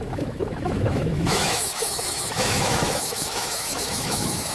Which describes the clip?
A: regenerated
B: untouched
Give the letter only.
A